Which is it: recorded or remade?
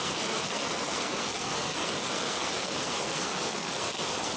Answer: remade